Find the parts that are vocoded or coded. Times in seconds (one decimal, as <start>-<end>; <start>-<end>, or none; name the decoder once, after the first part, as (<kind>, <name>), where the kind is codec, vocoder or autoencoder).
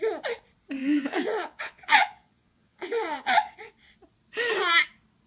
0.8-3.7 (vocoder, Vocos)